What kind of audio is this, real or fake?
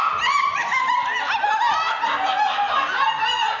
real